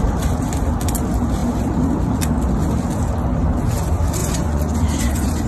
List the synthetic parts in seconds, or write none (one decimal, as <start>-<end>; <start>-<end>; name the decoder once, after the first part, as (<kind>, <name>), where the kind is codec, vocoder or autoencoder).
4.2-5.5 (vocoder, Vocos)